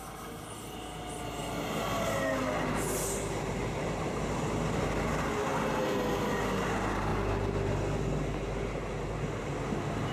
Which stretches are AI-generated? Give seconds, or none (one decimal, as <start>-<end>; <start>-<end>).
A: none